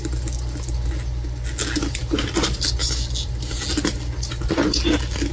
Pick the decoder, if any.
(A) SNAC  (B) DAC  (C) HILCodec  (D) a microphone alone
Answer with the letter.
D